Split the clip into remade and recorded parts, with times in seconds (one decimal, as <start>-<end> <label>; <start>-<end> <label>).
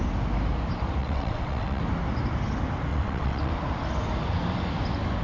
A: 0.0-1.0 recorded; 1.0-1.8 remade; 1.8-2.9 recorded; 2.9-3.5 remade; 3.5-5.2 recorded